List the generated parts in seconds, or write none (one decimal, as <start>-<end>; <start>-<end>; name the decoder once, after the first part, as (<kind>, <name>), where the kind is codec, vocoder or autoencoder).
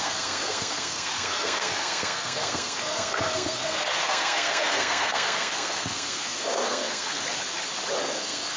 0.0-7.2 (codec, SNAC); 8.0-8.6